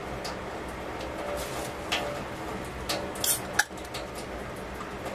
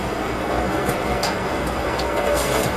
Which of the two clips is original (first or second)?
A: first